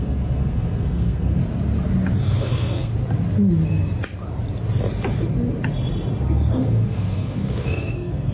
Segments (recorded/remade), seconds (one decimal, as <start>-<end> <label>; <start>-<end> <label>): 0.0-1.4 remade; 1.4-2.2 recorded; 2.2-2.9 remade; 2.9-6.2 recorded; 6.2-8.3 remade